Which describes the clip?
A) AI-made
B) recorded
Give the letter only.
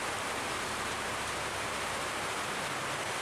B